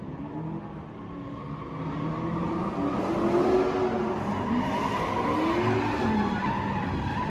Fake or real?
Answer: real